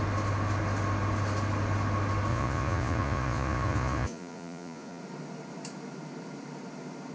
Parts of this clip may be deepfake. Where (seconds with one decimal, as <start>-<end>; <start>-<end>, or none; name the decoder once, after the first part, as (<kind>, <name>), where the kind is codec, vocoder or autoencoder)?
2.3-5.0 (vocoder, Vocos)